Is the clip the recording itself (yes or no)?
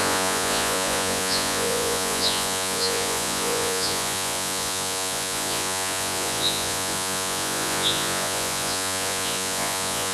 no